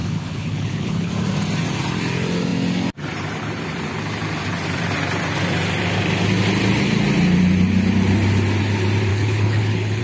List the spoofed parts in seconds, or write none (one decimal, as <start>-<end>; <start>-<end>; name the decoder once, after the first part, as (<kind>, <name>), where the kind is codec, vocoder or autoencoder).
0.0-1.1 (codec, HILCodec); 9.1-10.0